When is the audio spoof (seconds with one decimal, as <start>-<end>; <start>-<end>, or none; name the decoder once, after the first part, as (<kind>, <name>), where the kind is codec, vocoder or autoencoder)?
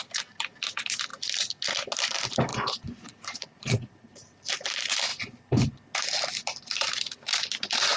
2.5-4.3 (vocoder, BigVGAN v2)